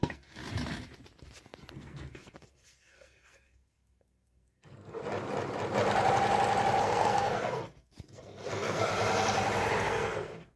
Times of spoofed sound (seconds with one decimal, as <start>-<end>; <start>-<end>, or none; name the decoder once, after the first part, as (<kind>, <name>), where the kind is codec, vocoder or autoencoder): 0.0-0.4 (codec, SNAC); 1.7-5.0; 6.8-8.9; 9.8-10.6